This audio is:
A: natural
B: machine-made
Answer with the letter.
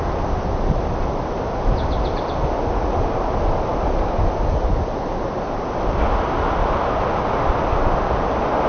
A